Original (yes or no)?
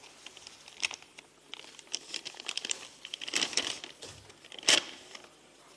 no